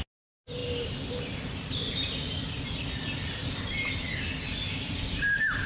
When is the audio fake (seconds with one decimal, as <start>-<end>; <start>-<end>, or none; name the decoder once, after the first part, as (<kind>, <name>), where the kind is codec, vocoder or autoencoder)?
none